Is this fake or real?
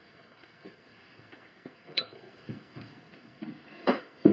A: fake